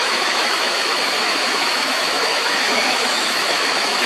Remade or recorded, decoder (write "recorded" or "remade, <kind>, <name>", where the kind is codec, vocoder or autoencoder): remade, autoencoder, DAC-VAE